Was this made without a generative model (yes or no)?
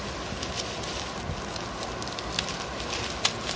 yes